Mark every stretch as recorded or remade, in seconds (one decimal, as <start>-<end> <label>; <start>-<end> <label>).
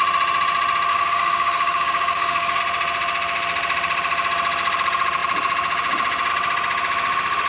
0.0-0.9 recorded; 0.9-2.6 remade; 2.6-7.5 recorded